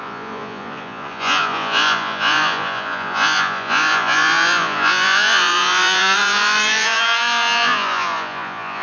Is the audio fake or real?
fake